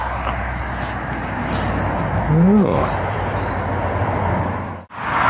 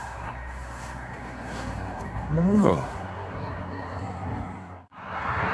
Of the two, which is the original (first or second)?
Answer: first